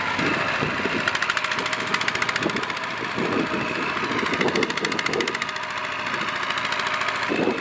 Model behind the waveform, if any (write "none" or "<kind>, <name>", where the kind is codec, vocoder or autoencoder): none